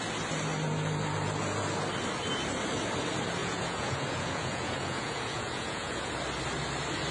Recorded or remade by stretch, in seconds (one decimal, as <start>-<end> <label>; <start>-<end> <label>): 0.0-3.4 recorded; 3.4-6.1 remade; 6.1-7.1 recorded